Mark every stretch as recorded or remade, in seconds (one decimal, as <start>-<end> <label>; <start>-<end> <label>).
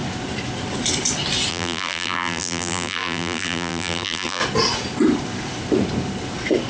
0.0-1.5 recorded; 1.5-4.4 remade; 4.4-6.7 recorded